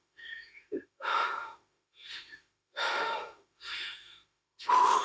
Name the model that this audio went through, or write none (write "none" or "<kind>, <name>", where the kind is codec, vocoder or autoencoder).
autoencoder, DAC-VAE